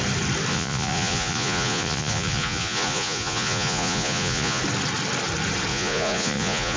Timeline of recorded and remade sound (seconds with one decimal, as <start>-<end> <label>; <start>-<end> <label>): 0.0-0.5 recorded; 0.5-4.6 remade; 4.6-5.7 recorded; 5.7-6.8 remade